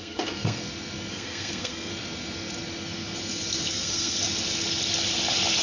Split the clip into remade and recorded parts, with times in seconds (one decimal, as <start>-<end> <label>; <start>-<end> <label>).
0.0-0.6 remade; 0.6-1.1 recorded; 1.1-1.9 remade; 1.9-3.7 recorded; 3.7-4.2 remade; 4.2-5.6 recorded